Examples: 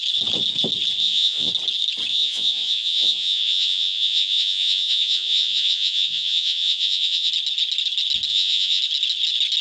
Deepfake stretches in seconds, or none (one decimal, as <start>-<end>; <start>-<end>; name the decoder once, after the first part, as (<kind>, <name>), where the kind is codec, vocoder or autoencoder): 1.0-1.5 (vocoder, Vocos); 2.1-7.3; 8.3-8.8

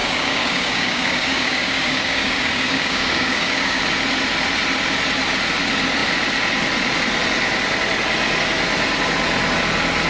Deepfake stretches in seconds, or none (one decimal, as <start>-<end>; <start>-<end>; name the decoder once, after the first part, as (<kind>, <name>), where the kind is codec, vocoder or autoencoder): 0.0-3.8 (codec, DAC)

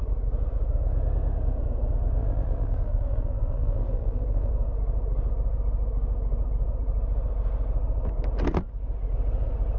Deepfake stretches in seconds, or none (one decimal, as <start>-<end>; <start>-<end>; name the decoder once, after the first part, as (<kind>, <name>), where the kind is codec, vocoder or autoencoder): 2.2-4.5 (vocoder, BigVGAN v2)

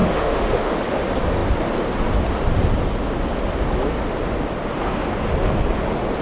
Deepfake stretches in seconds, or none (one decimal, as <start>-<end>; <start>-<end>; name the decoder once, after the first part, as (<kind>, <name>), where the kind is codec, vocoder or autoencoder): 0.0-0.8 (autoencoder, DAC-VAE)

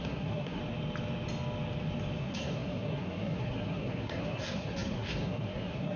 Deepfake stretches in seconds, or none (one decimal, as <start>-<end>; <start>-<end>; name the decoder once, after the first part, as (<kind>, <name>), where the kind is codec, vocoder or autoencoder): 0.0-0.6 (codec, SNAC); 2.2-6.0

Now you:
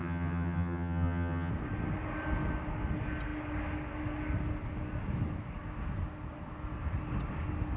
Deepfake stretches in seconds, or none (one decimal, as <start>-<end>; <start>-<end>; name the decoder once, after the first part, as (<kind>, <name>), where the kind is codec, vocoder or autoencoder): 0.0-1.5 (vocoder, HiFi-GAN)